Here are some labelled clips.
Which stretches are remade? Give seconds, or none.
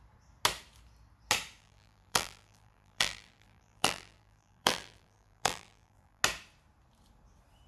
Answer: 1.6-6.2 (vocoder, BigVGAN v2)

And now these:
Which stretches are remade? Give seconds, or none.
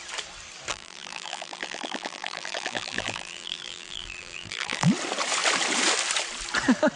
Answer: 0.7-4.9 (vocoder, BigVGAN v2)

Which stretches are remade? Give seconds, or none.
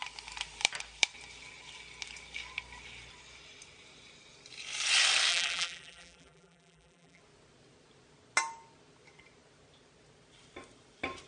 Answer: 5.3-7.2 (vocoder, BigVGAN v2)